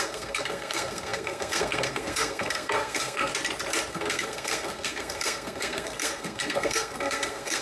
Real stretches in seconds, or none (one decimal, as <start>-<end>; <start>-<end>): 3.3-3.9

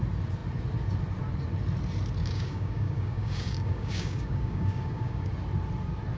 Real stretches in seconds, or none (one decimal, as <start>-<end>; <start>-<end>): 0.0-2.2; 5.3-6.2